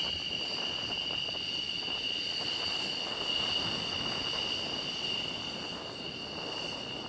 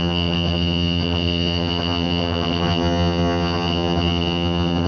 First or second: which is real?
first